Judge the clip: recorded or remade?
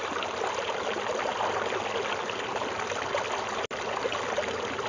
recorded